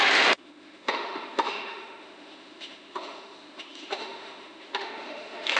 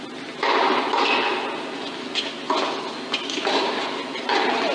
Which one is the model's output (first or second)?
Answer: first